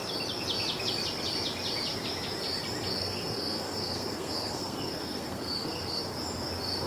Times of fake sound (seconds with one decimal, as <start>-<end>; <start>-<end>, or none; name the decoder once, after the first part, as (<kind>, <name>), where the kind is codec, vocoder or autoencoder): 3.0-6.0 (codec, SNAC)